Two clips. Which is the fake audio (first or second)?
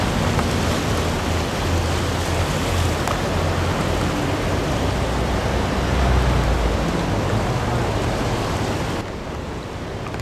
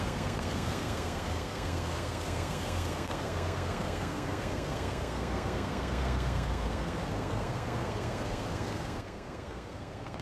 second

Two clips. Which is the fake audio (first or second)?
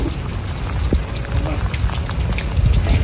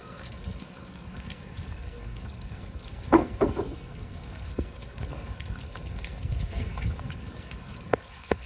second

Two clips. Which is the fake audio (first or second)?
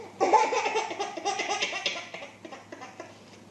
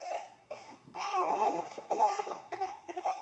second